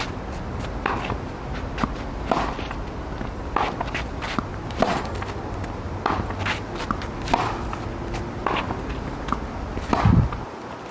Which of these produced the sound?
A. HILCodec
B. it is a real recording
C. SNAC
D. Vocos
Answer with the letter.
B